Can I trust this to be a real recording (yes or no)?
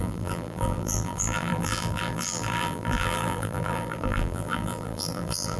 no